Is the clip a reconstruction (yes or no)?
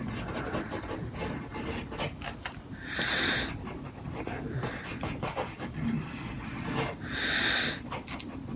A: no